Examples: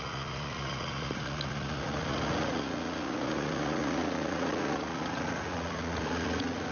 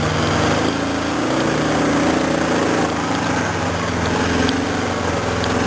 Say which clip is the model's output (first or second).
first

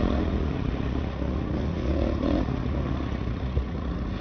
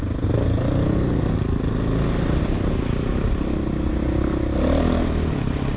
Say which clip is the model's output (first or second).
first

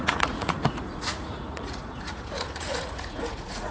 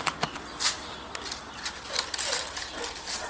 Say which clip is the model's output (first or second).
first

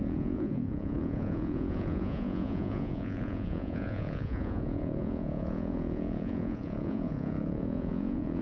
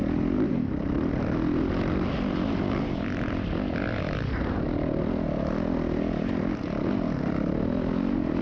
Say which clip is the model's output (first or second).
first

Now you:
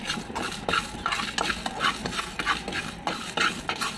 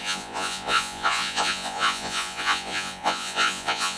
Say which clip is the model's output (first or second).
second